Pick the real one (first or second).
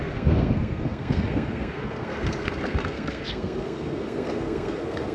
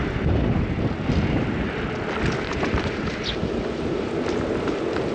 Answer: second